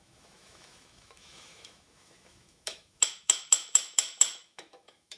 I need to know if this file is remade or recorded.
remade